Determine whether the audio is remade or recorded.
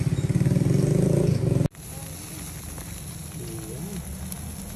recorded